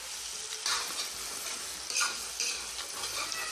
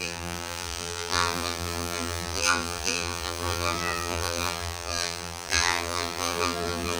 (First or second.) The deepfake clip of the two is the second